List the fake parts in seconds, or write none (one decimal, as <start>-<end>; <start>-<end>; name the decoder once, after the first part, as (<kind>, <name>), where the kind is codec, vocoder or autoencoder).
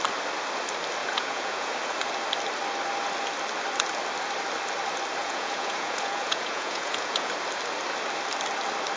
1.0-1.7 (vocoder, Vocos); 5.2-7.3